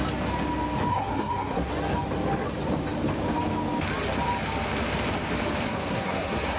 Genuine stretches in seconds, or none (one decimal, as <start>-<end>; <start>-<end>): 0.0-0.9; 1.7-5.7